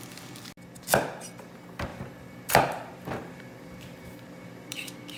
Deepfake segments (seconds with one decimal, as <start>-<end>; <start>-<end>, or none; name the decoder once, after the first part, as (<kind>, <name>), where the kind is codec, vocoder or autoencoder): 1.9-5.2 (vocoder, BigVGAN v2)